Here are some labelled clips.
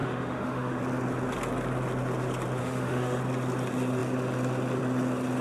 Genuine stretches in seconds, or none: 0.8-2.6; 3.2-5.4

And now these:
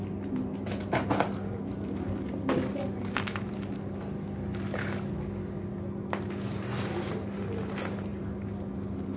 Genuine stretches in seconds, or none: 0.0-9.2